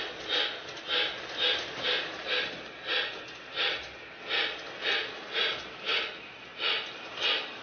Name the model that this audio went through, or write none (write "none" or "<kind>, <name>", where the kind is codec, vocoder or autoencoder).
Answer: none